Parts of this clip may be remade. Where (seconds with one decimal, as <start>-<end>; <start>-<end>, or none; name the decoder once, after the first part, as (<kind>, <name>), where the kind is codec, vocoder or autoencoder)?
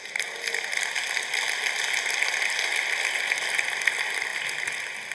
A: none